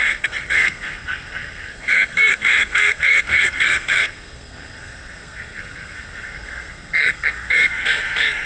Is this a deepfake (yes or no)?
yes